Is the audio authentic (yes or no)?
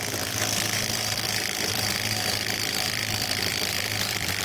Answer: no